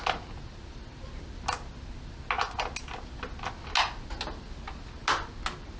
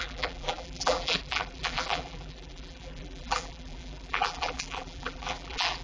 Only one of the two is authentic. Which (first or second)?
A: first